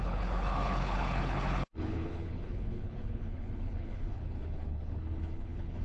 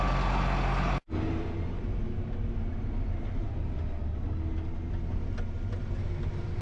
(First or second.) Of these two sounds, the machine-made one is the first